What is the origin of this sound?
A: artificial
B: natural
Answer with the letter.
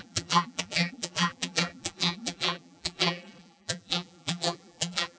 A